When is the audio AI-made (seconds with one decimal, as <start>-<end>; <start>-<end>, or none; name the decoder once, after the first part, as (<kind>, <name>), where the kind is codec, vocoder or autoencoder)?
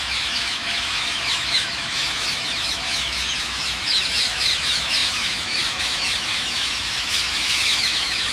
0.0-8.3 (autoencoder, DAC-VAE)